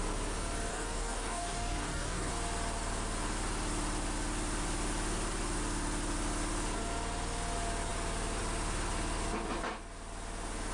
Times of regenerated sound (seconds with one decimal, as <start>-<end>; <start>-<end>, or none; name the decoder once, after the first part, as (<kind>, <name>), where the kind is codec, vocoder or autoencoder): 0.7-2.3 (codec, DAC)